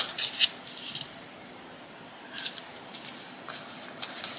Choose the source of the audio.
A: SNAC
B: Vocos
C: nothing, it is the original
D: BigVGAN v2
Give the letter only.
C